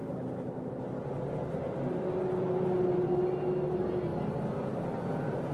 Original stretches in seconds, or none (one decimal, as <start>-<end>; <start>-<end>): 0.0-5.5